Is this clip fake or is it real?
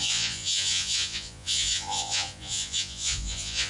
fake